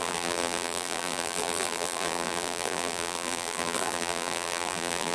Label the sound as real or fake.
fake